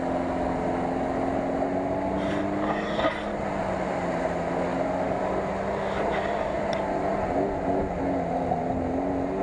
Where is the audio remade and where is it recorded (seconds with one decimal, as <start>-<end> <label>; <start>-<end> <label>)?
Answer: 0.0-9.4 recorded